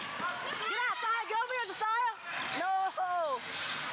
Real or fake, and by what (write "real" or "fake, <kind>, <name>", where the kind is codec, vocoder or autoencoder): real